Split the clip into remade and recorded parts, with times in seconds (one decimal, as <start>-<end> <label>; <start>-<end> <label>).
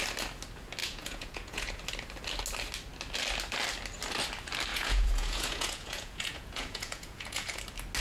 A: 0.0-0.8 recorded; 0.8-1.8 remade; 1.8-4.7 recorded; 4.7-7.6 remade; 7.6-8.0 recorded